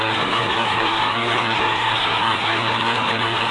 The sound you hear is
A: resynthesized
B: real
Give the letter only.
A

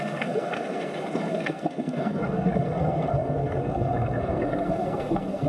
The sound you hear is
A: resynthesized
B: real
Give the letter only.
A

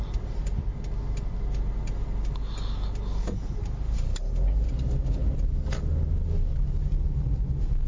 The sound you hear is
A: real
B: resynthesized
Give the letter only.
A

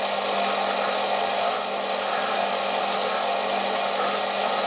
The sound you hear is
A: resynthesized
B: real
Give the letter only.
B